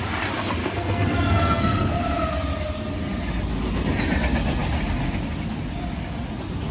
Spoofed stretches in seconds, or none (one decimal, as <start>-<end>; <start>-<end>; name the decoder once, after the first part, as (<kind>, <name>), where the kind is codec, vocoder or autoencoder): 0.6-2.0 (codec, SNAC)